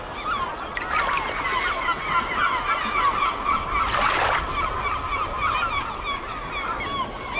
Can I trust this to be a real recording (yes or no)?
yes